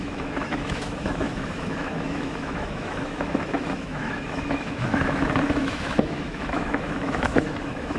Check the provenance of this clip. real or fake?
fake